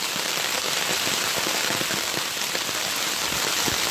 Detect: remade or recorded recorded